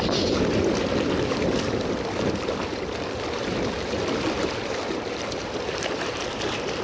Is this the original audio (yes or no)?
no